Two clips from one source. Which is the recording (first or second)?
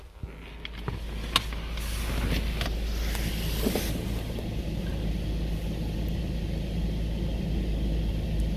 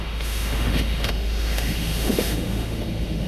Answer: first